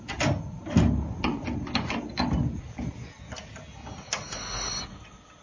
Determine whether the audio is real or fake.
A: real